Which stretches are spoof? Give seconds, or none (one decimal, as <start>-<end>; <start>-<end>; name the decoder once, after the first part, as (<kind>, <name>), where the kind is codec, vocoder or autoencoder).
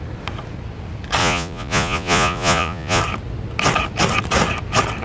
1.2-3.0 (vocoder, Vocos)